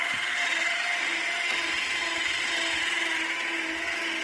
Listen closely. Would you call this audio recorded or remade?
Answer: recorded